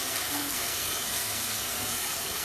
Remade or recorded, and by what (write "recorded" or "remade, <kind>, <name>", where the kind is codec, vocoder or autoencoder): remade, codec, SNAC